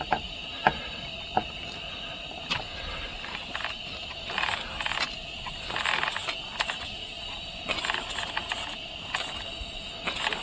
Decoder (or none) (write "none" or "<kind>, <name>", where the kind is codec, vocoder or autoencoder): none